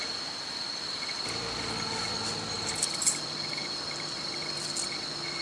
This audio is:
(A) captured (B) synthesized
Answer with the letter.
A